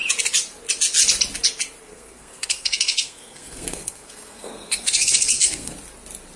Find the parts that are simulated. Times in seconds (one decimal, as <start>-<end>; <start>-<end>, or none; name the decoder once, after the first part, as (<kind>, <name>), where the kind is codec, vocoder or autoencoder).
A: 1.9-5.7 (codec, SNAC)